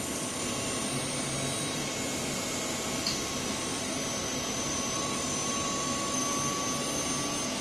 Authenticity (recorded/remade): recorded